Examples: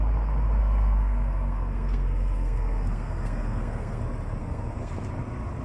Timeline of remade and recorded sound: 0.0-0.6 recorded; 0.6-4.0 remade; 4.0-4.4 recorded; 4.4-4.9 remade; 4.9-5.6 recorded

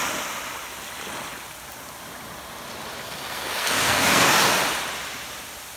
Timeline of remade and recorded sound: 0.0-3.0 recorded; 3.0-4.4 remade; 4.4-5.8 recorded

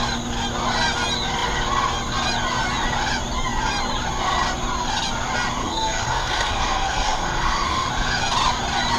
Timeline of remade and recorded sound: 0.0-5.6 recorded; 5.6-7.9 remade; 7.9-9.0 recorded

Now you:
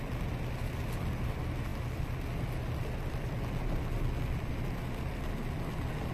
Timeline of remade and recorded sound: 0.0-6.1 recorded

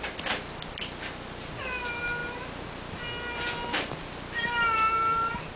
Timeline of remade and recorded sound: 0.0-5.6 recorded

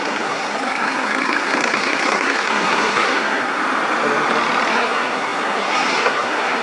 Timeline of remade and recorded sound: 0.0-3.6 remade; 3.6-4.7 recorded; 4.7-6.6 remade

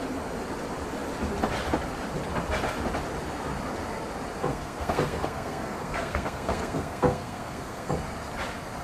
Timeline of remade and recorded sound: 0.0-4.5 recorded; 4.5-7.9 remade; 7.9-8.8 recorded